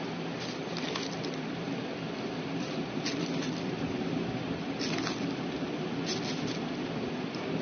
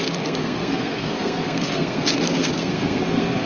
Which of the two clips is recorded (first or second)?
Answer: first